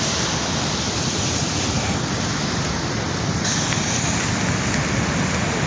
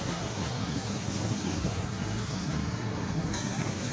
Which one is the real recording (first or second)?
first